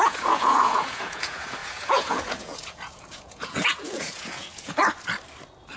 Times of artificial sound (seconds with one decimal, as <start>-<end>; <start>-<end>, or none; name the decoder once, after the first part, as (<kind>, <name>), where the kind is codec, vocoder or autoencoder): 0.0-4.8 (vocoder, Vocos)